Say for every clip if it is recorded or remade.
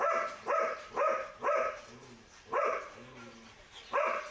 remade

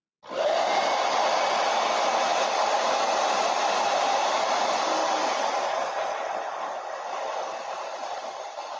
recorded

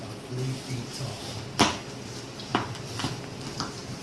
remade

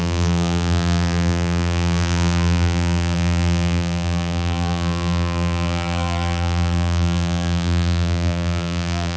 remade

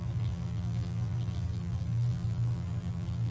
remade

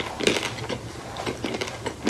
recorded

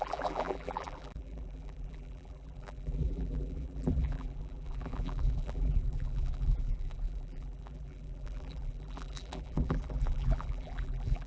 remade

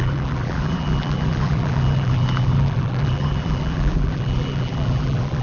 remade